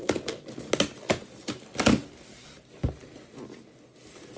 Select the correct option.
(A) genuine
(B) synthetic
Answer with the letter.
A